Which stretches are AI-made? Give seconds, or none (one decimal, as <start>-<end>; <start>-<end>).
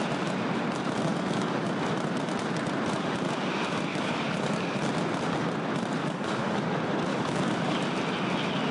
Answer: 1.1-1.7; 3.9-4.8; 6.0-6.6; 7.1-7.8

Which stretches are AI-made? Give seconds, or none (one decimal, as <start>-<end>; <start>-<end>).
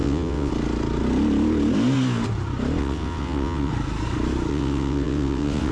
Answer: 0.0-0.5; 2.8-3.7; 4.5-5.7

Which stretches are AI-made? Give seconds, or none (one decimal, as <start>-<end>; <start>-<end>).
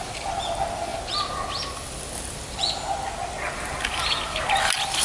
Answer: none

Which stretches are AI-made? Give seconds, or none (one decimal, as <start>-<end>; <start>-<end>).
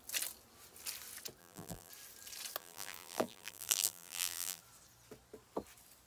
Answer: 1.4-1.9; 2.6-4.6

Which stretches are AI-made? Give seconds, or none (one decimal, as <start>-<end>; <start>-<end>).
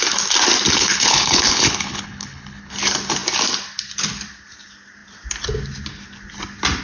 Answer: 0.7-2.7